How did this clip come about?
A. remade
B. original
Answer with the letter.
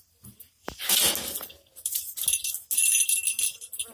B